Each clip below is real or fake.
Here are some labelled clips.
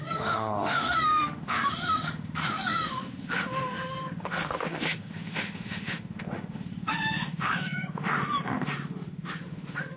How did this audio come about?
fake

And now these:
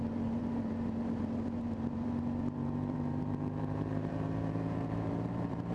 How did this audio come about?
fake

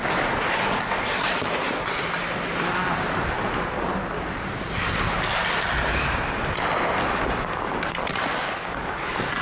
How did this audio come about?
real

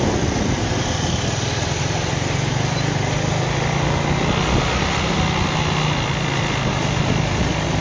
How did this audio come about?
real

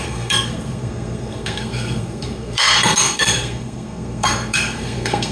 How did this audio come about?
fake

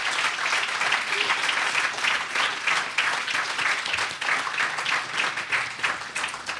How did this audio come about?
real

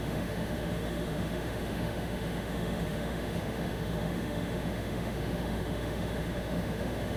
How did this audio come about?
fake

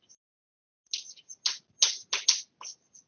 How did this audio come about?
real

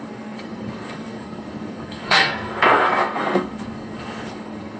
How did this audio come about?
fake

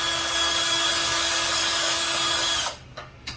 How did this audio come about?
fake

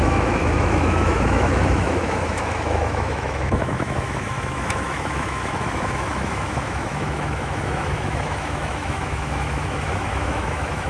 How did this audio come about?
fake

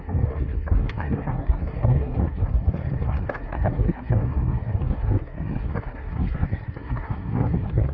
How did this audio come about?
fake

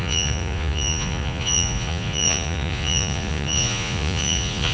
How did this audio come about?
fake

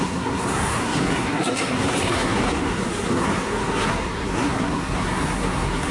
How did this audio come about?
fake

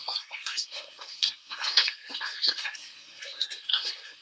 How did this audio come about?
fake